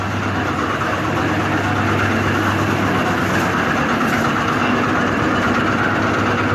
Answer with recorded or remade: recorded